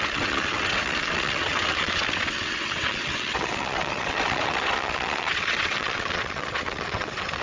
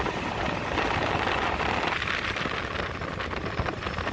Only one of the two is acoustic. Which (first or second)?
second